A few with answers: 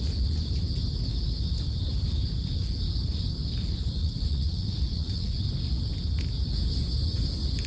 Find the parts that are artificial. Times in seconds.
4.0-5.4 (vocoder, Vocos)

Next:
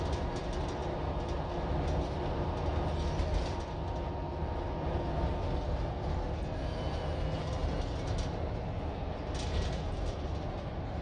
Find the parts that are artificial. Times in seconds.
none

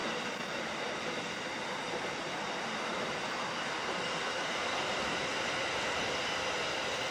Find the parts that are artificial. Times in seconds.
0.0-3.1 (vocoder, BigVGAN v2); 4.6-6.2

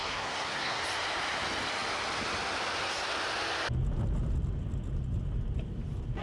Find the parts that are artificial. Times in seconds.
0.0-0.8 (codec, SNAC)

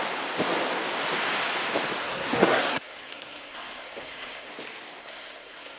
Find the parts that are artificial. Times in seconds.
2.0-4.5 (codec, SNAC); 5.0-5.8

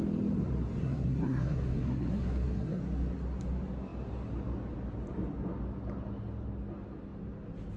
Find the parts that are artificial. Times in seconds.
0.8-2.8 (codec, SNAC)

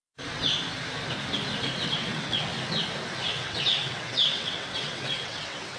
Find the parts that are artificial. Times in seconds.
1.8-2.5 (vocoder, WaveNeXt); 3.3-5.8

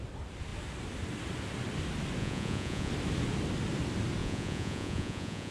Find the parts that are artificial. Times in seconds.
2.2-2.9 (vocoder, Vocos); 4.2-5.5